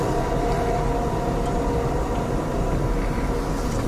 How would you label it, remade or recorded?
recorded